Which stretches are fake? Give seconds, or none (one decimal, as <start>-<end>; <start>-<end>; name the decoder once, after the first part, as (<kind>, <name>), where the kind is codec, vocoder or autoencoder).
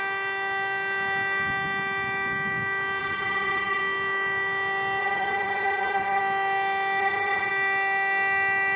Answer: 3.0-3.8 (vocoder, HiFi-GAN); 5.0-6.2; 7.0-7.5